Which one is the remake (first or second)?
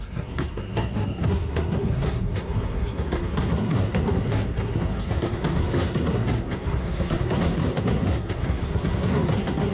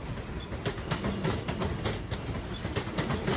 first